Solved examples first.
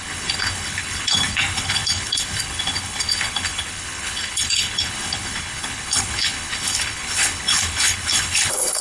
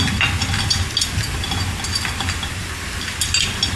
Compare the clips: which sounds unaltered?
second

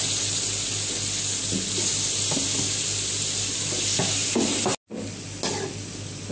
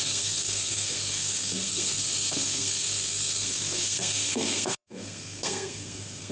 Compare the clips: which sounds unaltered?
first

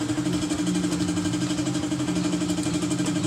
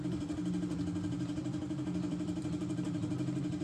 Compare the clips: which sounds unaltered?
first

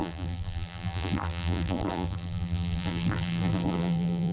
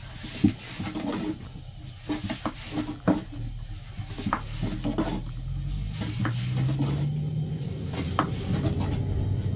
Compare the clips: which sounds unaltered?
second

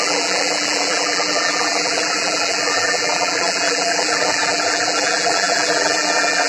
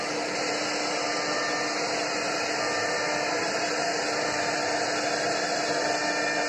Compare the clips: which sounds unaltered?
second